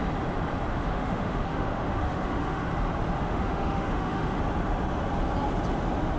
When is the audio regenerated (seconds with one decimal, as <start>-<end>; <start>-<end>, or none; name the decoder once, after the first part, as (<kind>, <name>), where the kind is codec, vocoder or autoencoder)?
0.7-2.7 (autoencoder, DAC-VAE); 3.2-4.4